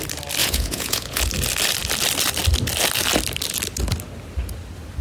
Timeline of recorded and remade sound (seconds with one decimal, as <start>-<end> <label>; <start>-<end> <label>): 0.0-0.4 recorded; 0.4-1.2 remade; 1.2-5.0 recorded